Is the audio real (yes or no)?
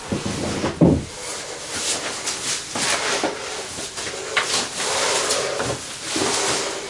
yes